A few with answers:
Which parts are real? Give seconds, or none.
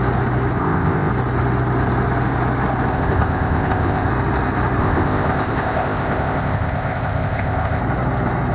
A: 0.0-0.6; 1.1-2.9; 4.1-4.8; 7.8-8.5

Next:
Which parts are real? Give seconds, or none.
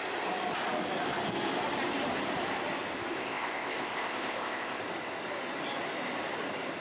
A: 0.0-3.1; 4.8-6.8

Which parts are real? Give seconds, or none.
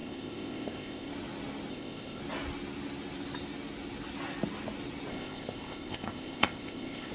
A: 1.1-1.7; 2.2-5.1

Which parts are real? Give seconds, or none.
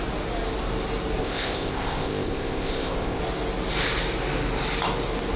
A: 0.0-1.2; 3.2-5.4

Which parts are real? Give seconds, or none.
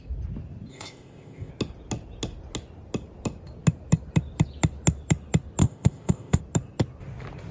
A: 0.0-0.7; 1.5-5.6; 6.4-7.5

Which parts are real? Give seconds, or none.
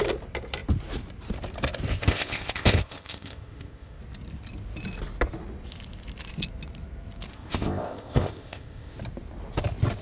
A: 0.0-1.9; 4.0-7.3; 9.0-10.0